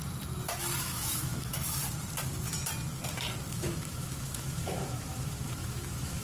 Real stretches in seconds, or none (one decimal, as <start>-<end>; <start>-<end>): 0.0-0.8; 1.8-3.5